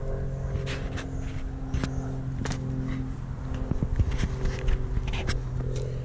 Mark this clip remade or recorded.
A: recorded